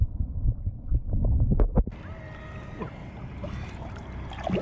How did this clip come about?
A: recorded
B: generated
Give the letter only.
A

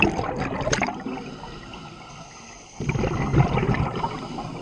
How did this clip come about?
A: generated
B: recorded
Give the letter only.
B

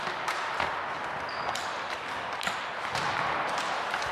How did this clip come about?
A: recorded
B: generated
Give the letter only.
A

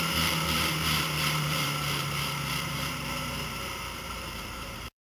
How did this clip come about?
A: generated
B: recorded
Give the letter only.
A